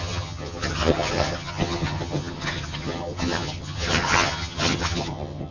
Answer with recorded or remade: remade